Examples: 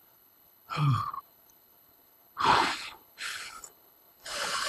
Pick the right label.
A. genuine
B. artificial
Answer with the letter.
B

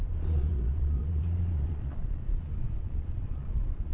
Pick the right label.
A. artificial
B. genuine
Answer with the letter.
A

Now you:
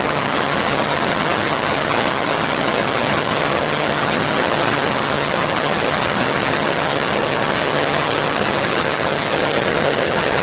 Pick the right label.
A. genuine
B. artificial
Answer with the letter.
B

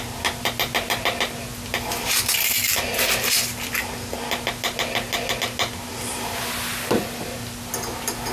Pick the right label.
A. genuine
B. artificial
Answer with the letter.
A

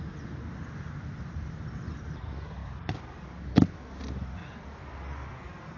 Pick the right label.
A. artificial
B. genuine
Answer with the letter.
B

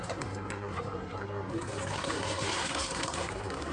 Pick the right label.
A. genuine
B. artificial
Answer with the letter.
B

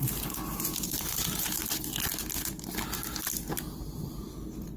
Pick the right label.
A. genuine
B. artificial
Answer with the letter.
A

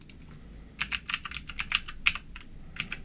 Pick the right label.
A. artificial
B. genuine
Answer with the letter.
B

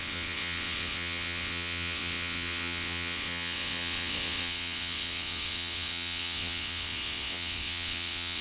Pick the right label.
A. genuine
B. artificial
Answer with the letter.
B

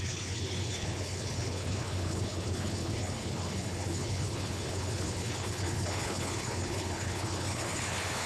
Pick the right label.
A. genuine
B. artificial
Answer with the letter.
B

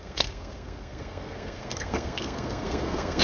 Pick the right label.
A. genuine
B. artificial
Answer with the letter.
B